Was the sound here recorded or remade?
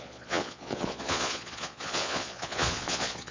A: remade